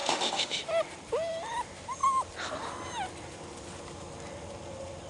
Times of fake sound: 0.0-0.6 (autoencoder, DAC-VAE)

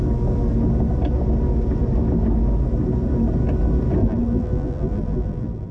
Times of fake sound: 4.0-5.7 (vocoder, BigVGAN v2)

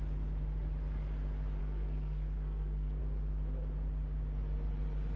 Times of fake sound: 1.6-3.0 (codec, SNAC)